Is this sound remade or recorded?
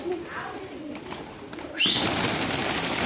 recorded